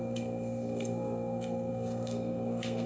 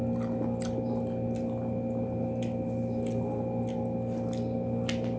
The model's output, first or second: first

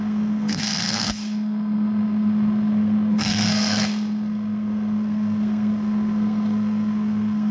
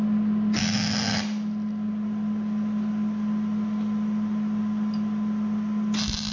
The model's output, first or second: first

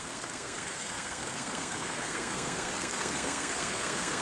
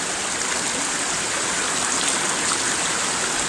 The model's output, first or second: first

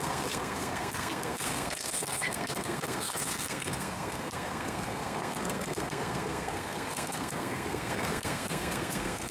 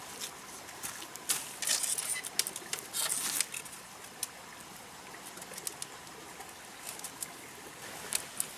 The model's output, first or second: first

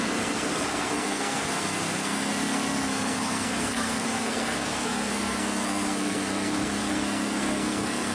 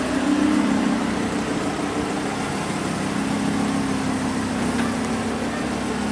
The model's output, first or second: first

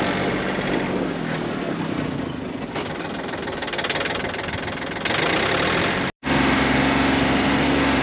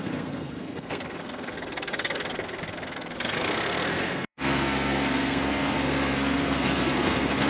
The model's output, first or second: second